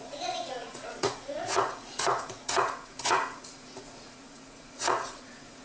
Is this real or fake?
fake